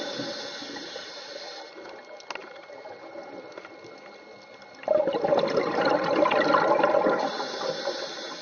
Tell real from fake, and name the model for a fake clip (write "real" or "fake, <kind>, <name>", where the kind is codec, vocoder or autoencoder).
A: real